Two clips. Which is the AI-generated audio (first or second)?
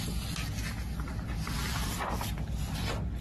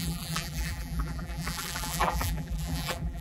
second